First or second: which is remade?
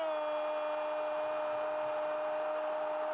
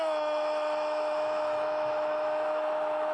second